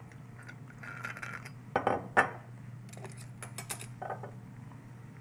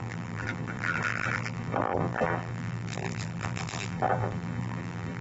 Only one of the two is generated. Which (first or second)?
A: second